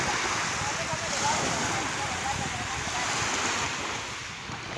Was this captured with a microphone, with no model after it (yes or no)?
yes